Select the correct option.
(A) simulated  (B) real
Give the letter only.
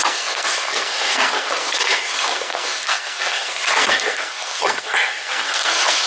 A